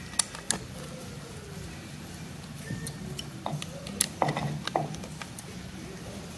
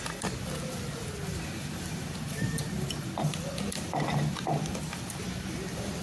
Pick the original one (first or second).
first